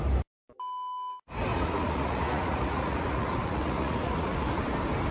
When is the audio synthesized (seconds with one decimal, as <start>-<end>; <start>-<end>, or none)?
1.5-4.6